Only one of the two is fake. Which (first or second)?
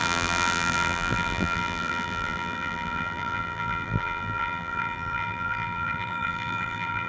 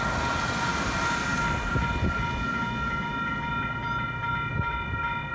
first